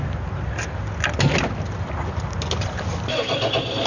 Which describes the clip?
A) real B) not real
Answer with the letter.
A